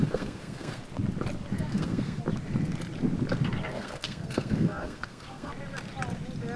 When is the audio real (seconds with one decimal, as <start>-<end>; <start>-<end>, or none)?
0.8-1.7; 2.2-3.7; 5.5-6.6